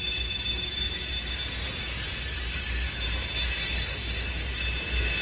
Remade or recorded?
recorded